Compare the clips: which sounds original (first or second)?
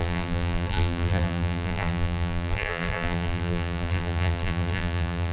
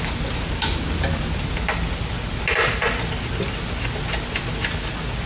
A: second